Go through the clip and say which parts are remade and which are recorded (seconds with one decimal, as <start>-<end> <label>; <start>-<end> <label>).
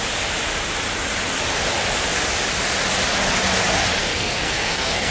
0.0-4.0 recorded; 4.0-5.1 remade